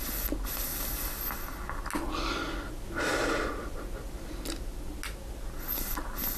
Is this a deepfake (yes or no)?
no